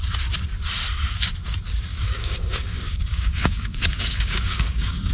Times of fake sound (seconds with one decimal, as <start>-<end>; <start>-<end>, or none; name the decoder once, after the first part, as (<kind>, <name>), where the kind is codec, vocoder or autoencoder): 1.9-5.1 (codec, DAC)